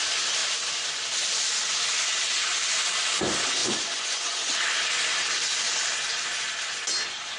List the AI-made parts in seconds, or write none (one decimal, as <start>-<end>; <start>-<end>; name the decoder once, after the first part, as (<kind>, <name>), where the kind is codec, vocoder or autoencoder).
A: 3.6-4.5 (vocoder, Vocos)